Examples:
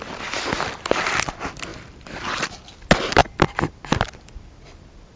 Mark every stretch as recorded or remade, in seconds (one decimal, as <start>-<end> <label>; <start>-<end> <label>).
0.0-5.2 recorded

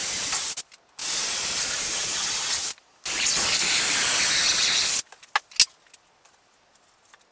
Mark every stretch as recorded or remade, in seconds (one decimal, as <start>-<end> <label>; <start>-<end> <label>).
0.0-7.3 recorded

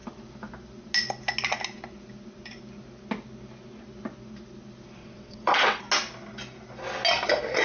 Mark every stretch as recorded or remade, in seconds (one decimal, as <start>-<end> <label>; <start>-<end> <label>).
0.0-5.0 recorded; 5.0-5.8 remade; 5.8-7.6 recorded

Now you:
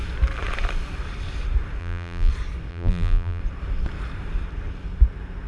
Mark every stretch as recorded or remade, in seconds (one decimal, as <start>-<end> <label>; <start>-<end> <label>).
0.0-1.8 recorded; 1.8-2.3 remade; 2.3-2.7 recorded; 2.7-3.4 remade; 3.4-5.5 recorded

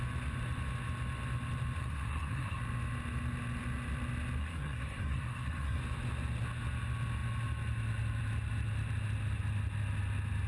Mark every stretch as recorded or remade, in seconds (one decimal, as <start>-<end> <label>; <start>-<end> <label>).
0.0-1.8 recorded; 1.8-2.6 remade; 2.6-4.4 recorded; 4.4-5.8 remade; 5.8-10.5 recorded

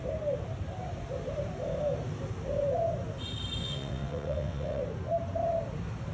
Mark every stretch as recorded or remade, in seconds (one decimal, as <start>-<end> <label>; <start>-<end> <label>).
0.0-3.6 recorded; 3.6-4.8 remade; 4.8-6.1 recorded

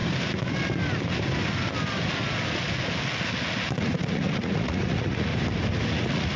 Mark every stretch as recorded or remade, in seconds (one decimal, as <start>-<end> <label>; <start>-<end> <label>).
0.0-3.8 recorded; 3.8-5.3 remade; 5.3-5.9 recorded; 5.9-6.4 remade

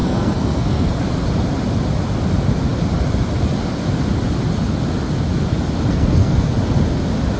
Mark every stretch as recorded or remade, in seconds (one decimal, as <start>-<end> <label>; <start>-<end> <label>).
0.0-1.0 remade; 1.0-5.9 recorded; 5.9-6.5 remade; 6.5-7.4 recorded